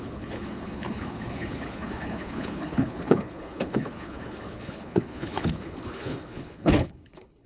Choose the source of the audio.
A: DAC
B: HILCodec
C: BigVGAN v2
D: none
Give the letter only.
B